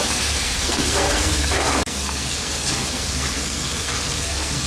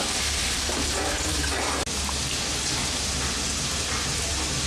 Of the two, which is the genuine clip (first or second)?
second